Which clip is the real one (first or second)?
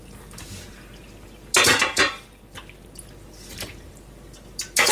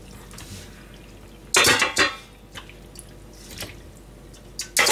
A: second